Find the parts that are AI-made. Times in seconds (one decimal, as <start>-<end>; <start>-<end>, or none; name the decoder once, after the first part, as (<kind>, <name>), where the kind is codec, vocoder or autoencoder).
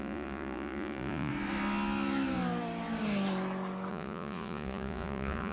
0.0-1.3 (vocoder, Vocos); 3.9-5.5